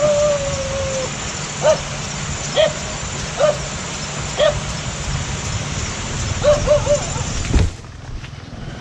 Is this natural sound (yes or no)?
yes